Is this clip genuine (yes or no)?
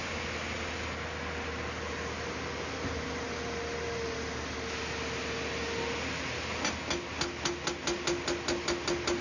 yes